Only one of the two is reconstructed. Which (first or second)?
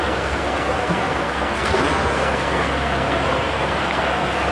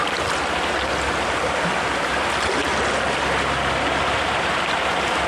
first